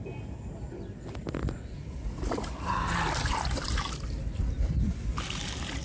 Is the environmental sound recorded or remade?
recorded